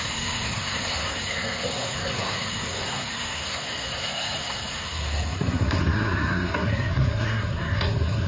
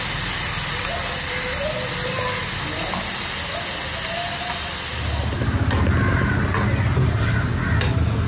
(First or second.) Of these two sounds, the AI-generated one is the first